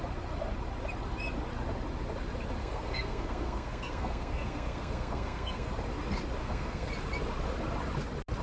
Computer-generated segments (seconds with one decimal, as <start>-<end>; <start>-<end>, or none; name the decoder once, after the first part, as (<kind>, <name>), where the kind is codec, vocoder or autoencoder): 2.6-5.7 (codec, SNAC); 6.4-6.9

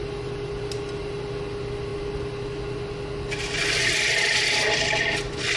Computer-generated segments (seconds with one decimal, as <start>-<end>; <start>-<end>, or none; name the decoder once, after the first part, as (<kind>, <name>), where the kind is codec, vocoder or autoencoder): none

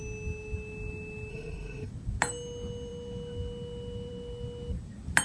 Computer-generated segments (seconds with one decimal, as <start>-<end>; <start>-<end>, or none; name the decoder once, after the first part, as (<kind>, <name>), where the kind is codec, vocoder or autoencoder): 1.3-1.9 (codec, SNAC)

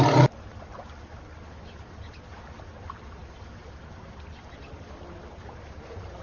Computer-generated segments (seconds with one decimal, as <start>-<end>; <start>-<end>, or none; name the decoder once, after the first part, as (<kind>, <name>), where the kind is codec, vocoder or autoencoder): none

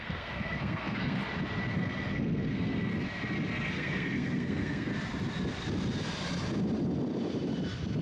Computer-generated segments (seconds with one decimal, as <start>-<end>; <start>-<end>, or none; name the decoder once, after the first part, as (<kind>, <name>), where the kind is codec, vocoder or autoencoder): 0.0-1.2 (codec, SNAC); 1.7-2.9; 3.7-4.9

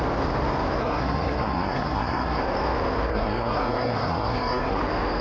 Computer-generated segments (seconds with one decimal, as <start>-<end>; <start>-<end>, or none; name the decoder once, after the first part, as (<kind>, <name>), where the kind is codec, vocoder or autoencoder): 0.8-2.4 (codec, SNAC); 3.1-4.8